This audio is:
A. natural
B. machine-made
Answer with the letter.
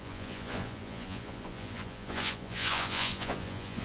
B